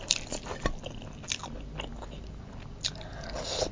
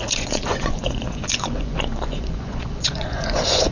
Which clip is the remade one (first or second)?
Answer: second